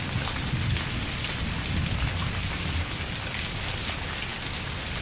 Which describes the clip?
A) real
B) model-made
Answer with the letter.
A